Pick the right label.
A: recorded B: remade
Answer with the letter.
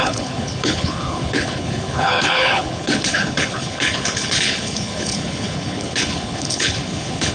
B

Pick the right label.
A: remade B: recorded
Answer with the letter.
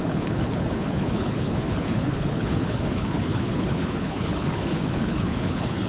A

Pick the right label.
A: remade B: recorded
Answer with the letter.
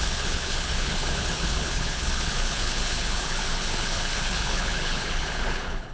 A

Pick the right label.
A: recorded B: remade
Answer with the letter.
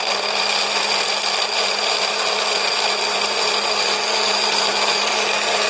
A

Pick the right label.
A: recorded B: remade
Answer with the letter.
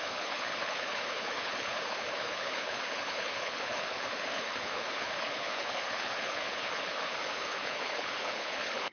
B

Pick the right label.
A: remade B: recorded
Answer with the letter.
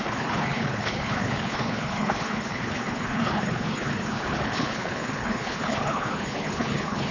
A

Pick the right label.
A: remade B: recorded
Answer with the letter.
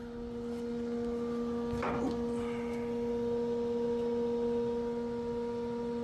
B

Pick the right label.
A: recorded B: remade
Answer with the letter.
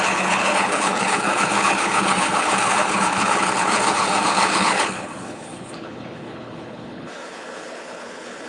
B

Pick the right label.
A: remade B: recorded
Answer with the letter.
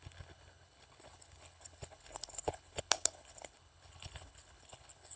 A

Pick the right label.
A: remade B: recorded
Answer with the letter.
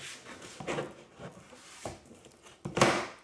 B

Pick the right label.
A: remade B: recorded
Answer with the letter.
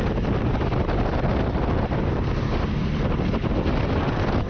B